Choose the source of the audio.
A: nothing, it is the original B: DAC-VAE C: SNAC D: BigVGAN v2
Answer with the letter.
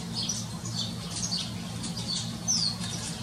A